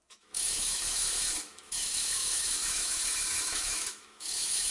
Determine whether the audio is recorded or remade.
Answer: remade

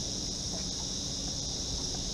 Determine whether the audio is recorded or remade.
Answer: recorded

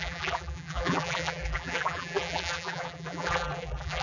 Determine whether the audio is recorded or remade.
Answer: remade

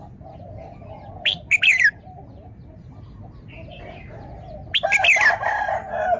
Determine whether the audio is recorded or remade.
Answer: recorded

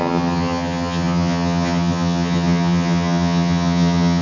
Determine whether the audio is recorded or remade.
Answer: remade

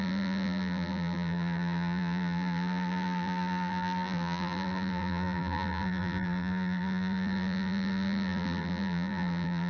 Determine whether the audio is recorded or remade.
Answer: remade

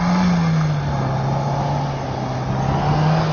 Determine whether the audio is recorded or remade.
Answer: recorded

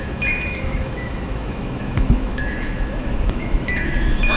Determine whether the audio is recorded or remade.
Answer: remade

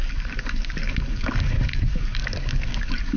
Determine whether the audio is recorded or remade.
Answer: remade